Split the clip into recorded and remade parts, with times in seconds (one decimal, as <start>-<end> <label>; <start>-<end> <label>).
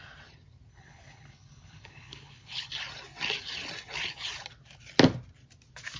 0.0-0.7 recorded; 0.7-2.7 remade; 2.7-6.0 recorded